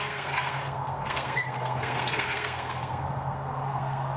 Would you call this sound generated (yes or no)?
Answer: yes